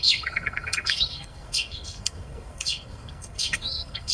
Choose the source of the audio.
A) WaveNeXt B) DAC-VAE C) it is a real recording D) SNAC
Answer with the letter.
D